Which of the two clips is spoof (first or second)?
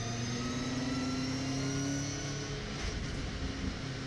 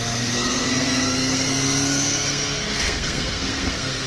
second